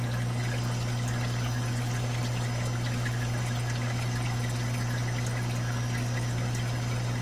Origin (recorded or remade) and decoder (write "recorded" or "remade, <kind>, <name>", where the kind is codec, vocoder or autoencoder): recorded